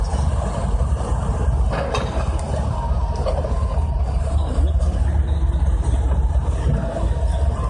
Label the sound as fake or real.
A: fake